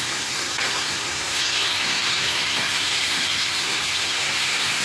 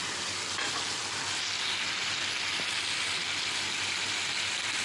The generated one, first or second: first